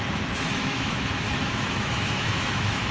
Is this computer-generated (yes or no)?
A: yes